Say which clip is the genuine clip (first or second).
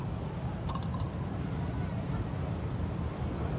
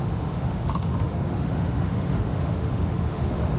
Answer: first